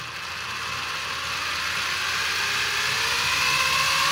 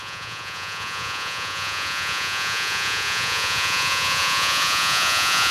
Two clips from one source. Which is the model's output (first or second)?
second